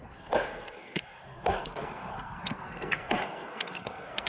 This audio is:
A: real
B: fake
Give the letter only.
B